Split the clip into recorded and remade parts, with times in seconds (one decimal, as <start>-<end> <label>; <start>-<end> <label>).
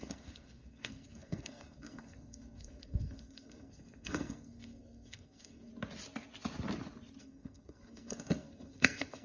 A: 0.0-5.7 remade; 5.7-7.2 recorded; 7.2-9.2 remade